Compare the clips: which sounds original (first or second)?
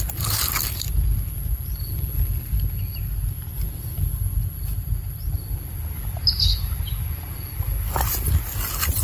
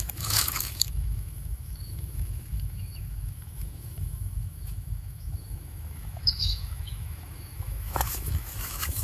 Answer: first